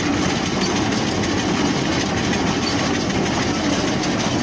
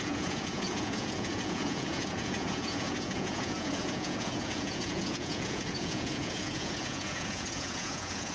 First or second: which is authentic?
first